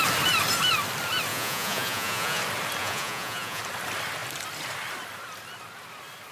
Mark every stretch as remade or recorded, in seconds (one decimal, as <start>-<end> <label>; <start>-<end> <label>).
0.0-1.3 recorded; 1.3-2.4 remade; 2.4-2.8 recorded; 2.8-3.6 remade; 3.6-6.3 recorded